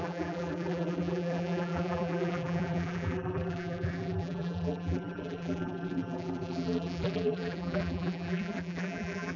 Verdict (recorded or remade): remade